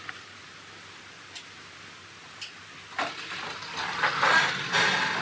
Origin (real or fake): real